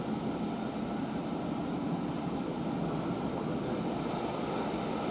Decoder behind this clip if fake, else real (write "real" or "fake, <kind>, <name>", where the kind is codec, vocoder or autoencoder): real